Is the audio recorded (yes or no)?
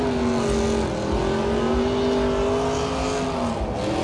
yes